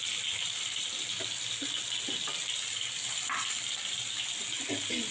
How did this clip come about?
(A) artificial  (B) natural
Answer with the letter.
B